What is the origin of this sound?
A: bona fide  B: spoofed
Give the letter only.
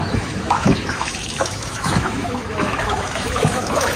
B